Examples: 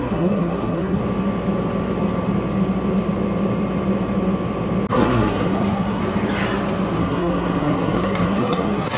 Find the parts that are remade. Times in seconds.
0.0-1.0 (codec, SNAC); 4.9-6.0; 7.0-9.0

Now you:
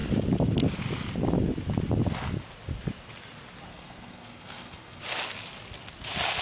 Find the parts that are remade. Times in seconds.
3.7-5.0 (codec, SNAC)

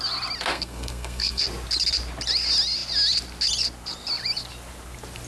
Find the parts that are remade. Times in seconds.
0.5-1.4 (codec, SNAC)

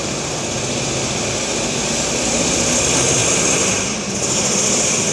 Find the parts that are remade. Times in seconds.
none

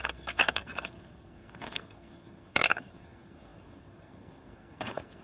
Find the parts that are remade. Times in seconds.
0.0-5.2 (codec, SNAC)

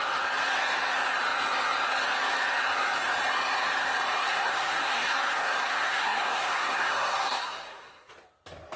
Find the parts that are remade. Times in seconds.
4.2-8.1 (codec, SNAC)